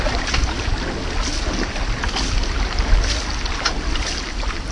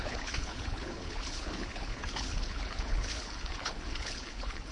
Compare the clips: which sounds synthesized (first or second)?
second